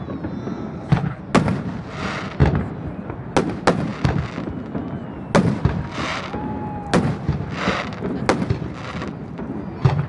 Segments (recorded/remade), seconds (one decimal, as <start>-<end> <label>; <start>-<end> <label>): 0.0-0.7 recorded; 0.7-1.2 remade; 1.2-10.1 recorded